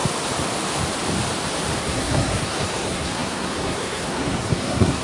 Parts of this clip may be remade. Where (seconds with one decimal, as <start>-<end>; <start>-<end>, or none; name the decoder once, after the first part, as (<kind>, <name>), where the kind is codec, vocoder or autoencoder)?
1.8-5.0 (codec, SNAC)